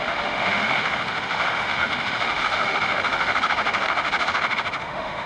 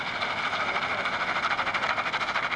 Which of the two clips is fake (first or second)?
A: first